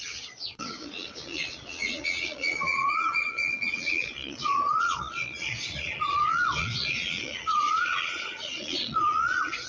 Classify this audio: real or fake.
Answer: fake